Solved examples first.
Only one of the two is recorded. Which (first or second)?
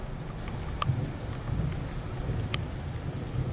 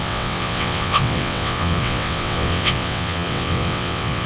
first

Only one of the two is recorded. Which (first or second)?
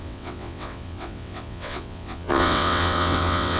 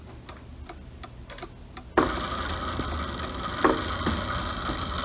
second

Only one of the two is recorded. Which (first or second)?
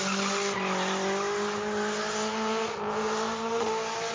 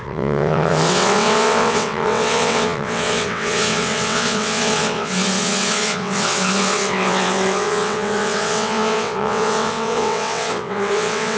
first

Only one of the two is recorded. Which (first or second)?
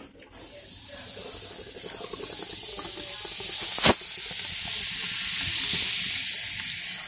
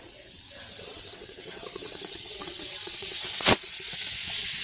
first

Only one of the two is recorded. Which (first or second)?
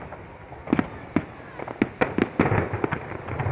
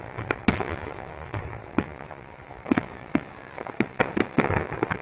first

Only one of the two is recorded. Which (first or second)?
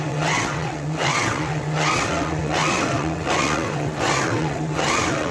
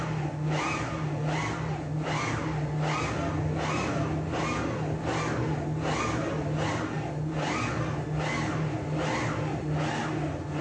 second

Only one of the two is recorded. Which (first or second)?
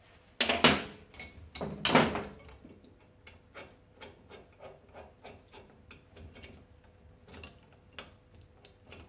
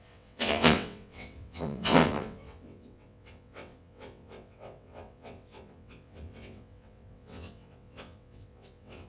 first